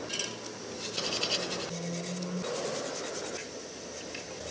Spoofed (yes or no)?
no